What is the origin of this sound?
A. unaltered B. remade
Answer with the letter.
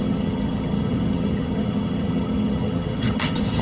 B